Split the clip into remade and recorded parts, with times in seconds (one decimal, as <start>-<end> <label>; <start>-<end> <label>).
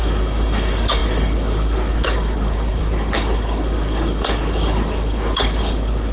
0.0-6.1 remade